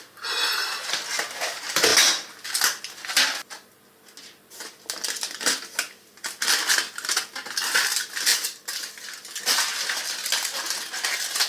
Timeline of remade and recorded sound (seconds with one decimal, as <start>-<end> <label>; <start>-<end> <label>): 0.0-11.5 recorded